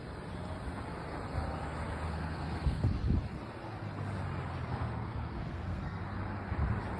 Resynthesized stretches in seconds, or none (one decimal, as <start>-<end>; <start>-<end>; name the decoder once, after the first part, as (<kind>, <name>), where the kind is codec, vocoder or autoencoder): 2.1-2.9 (codec, SNAC); 4.7-6.0